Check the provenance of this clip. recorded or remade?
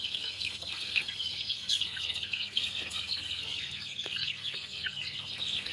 remade